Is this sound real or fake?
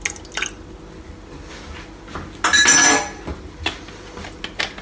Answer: real